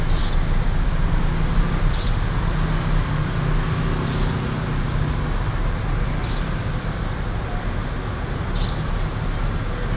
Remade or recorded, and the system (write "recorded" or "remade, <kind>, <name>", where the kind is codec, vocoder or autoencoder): recorded